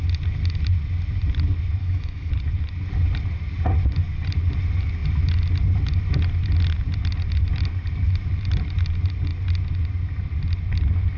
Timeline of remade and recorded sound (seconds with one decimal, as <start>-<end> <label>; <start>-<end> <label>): 0.0-1.8 recorded; 1.8-2.3 remade; 2.3-11.2 recorded

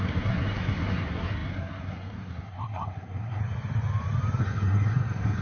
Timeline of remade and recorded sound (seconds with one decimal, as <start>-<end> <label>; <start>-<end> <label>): 0.0-3.4 remade; 3.4-4.4 recorded; 4.4-5.4 remade